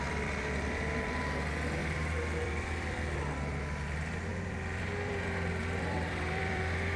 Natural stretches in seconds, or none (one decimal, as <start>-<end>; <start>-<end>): 1.2-1.8; 3.2-4.3; 6.6-7.0